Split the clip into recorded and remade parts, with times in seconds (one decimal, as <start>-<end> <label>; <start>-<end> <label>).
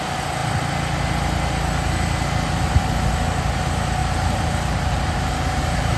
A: 0.0-4.0 recorded; 4.0-6.0 remade